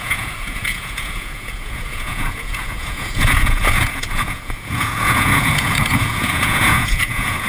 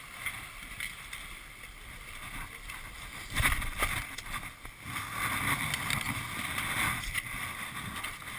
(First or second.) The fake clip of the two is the first